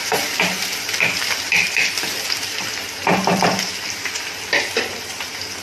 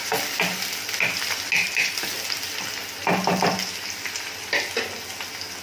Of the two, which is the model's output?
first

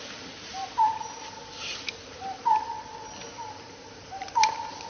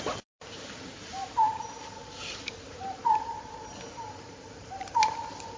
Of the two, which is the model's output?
second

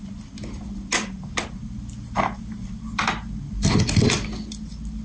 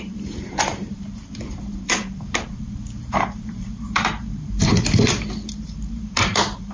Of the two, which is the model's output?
second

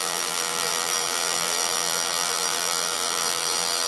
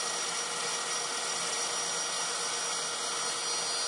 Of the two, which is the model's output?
first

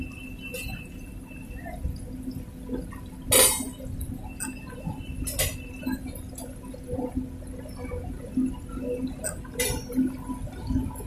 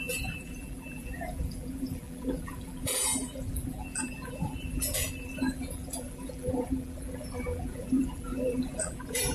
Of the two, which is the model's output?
second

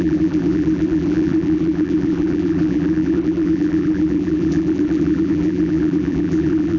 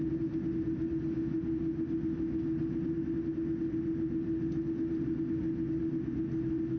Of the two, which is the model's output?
first